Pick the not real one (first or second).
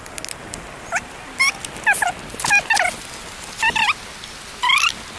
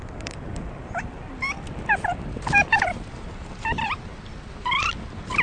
second